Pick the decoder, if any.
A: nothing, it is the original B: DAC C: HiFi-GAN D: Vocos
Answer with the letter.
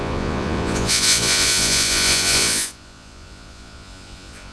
D